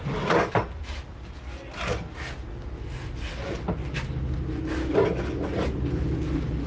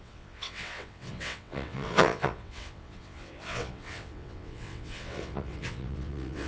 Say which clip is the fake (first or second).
second